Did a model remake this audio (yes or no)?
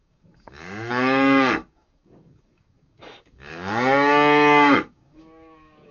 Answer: yes